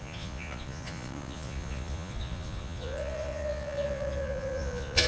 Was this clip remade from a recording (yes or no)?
yes